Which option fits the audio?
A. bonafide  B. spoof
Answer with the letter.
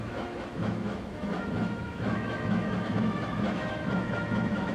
B